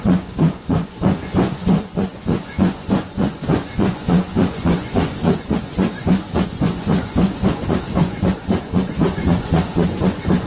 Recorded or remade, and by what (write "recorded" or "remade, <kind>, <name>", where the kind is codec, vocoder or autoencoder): remade, vocoder, Vocos